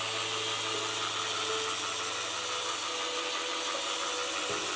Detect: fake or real real